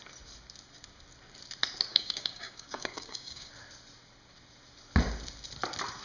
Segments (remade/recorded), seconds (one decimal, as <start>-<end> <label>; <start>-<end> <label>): 0.0-1.9 recorded; 1.9-3.5 remade; 3.5-6.0 recorded

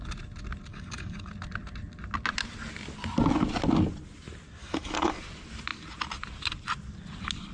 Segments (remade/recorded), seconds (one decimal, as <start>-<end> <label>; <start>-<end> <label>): 0.0-0.7 recorded; 0.7-1.3 remade; 1.3-4.6 recorded; 4.6-5.2 remade; 5.2-7.5 recorded

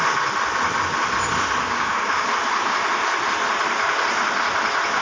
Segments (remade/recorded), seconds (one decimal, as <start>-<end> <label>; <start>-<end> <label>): 0.0-1.6 recorded; 1.6-2.3 remade; 2.3-5.0 recorded